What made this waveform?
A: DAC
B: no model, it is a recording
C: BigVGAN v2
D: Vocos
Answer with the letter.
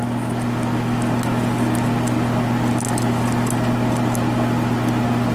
B